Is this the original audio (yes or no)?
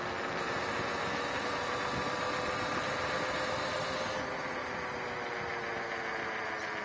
yes